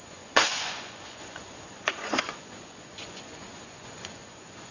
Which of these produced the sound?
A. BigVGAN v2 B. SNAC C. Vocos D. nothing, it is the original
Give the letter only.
C